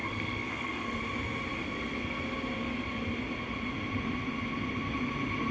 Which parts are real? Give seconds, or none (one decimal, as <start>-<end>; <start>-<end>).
1.0-1.6; 2.2-5.5